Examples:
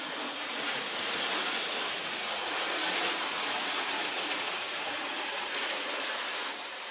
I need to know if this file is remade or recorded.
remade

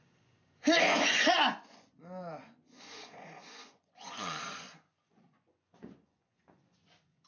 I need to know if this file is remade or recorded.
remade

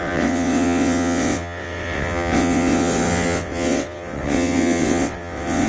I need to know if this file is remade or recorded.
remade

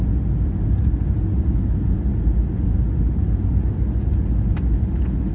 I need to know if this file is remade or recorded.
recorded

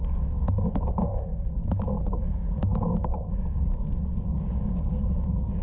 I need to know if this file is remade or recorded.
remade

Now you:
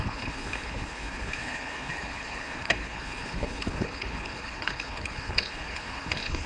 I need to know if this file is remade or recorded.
remade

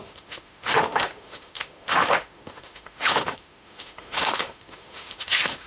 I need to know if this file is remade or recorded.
remade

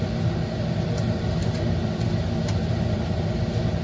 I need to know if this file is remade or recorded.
recorded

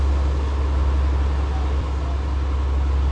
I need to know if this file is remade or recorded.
recorded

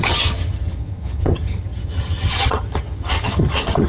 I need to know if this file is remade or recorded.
remade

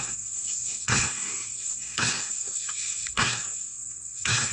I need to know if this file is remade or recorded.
remade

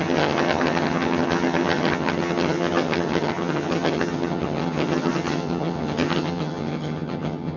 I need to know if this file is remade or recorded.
remade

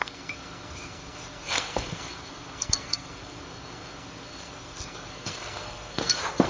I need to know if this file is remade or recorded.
remade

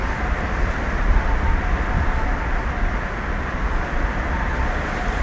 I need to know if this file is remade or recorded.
remade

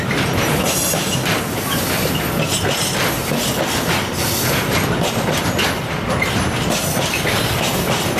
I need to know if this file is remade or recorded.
recorded